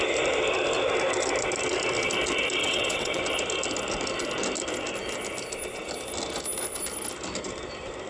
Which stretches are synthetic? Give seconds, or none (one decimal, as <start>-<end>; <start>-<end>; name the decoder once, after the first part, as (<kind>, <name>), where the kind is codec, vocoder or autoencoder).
2.6-3.2 (vocoder, WaveNeXt)